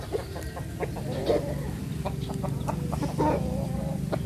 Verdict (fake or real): real